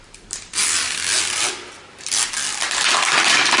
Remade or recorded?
recorded